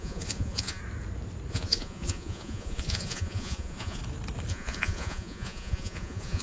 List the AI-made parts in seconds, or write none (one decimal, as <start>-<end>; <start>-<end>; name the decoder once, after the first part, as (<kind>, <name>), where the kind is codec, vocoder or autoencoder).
0.0-0.8 (vocoder, Vocos); 1.5-4.0; 4.5-6.4